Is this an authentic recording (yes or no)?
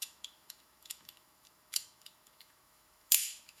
no